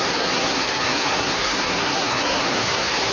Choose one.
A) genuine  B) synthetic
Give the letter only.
B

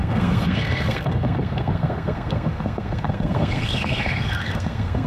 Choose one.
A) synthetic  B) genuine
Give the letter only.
A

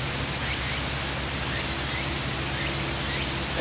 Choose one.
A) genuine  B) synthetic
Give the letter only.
A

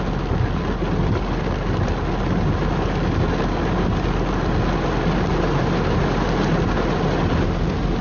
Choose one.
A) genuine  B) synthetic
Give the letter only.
A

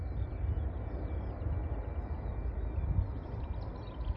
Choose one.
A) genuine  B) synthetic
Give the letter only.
A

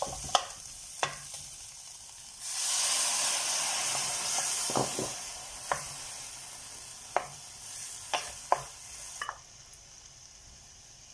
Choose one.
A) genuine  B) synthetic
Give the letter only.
A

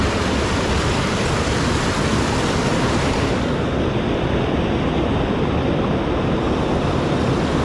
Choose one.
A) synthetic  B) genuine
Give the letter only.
B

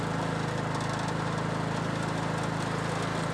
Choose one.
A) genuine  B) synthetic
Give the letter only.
A